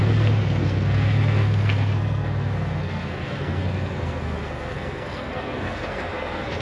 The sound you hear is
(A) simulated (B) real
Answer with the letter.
A